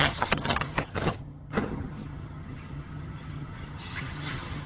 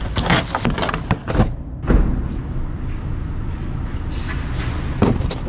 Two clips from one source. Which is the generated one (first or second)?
first